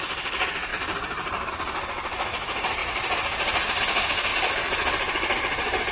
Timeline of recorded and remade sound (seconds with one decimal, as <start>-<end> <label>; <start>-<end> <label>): 0.0-0.7 recorded; 0.7-1.5 remade; 1.5-4.3 recorded; 4.3-5.9 remade